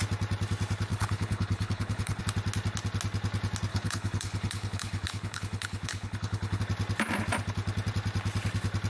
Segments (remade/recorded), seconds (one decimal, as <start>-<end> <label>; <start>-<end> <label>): 0.0-0.9 recorded; 0.9-2.2 remade; 2.2-3.7 recorded; 3.7-6.6 remade; 6.6-8.9 recorded